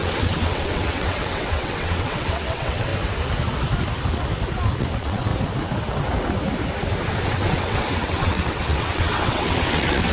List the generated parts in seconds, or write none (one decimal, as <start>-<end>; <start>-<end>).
0.0-2.9; 4.8-5.3; 7.1-10.1